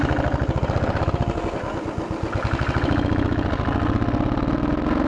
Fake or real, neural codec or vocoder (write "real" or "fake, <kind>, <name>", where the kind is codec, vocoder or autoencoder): real